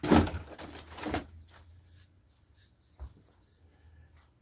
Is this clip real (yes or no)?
yes